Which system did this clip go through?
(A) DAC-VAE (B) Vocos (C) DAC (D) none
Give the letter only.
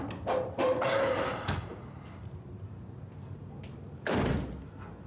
D